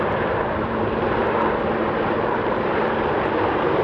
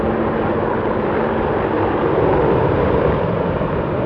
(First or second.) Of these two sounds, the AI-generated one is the first